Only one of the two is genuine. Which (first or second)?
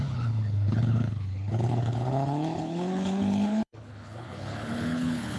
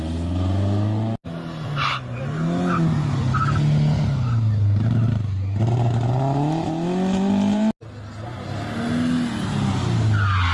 second